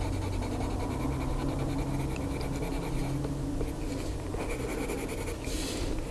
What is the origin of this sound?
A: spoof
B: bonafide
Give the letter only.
B